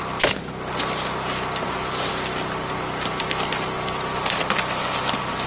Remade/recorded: recorded